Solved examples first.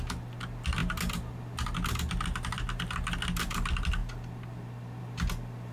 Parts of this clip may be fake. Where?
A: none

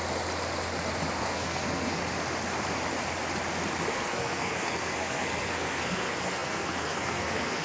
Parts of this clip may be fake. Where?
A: 1.2-2.0 (codec, SNAC); 3.9-7.6

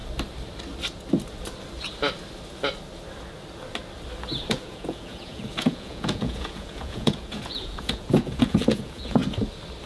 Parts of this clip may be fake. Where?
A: 4.5-9.2 (vocoder, Vocos)

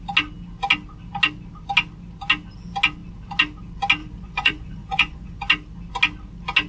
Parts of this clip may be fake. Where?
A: 4.0-5.4 (vocoder, Vocos)

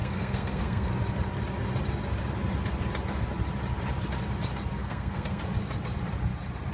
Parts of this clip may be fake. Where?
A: 0.0-0.9 (codec, SNAC); 4.8-5.4